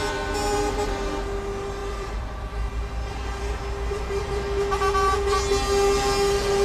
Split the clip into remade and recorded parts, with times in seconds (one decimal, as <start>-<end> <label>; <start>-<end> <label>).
0.0-1.8 recorded; 1.8-2.9 remade; 2.9-6.6 recorded